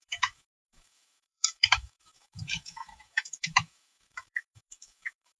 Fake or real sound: fake